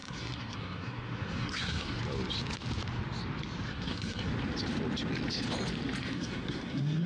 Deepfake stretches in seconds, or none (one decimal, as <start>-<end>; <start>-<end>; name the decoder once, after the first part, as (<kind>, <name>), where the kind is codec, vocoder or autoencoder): 0.0-2.0 (codec, SNAC); 3.7-4.3; 6.0-7.1